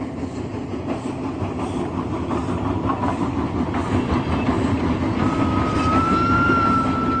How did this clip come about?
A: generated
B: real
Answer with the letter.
B